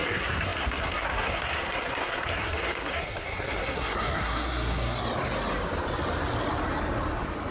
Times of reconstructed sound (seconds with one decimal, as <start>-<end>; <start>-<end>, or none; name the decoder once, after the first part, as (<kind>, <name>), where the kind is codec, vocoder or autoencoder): 0.0-5.0 (codec, SNAC)